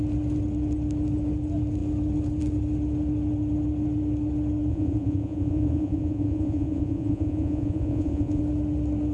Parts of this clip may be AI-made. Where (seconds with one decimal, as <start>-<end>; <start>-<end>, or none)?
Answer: 4.7-8.4